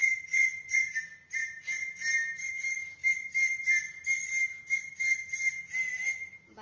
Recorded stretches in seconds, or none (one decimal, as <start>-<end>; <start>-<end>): 0.9-6.6